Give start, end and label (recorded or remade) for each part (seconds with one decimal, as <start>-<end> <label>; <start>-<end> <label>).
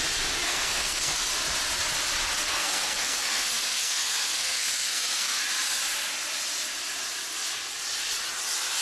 0.0-0.4 recorded; 0.4-1.3 remade; 1.3-2.4 recorded; 2.4-5.4 remade; 5.4-8.8 recorded